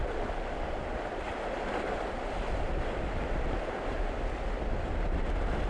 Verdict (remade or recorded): recorded